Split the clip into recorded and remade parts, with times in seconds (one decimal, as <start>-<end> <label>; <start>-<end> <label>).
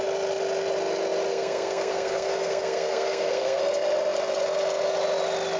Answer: 0.0-1.3 recorded; 1.3-3.6 remade; 3.6-5.6 recorded